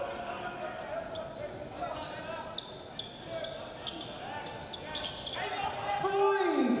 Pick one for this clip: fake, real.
real